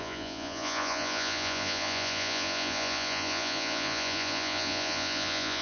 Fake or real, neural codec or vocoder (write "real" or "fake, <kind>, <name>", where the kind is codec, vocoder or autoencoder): fake, vocoder, Vocos